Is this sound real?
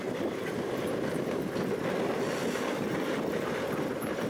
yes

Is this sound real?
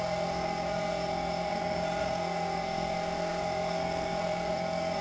no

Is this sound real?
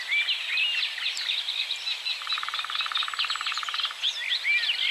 yes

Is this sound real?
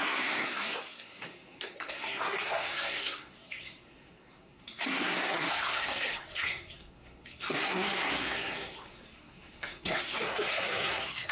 no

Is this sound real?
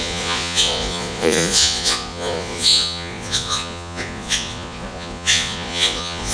no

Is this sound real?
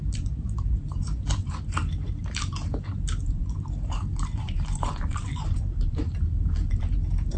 no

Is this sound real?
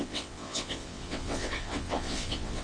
no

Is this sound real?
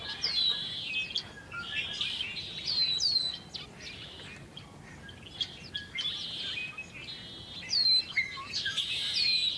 yes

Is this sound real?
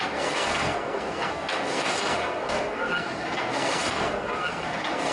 no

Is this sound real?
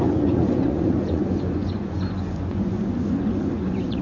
no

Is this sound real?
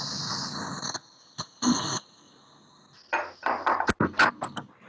yes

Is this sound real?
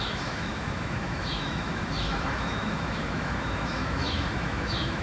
no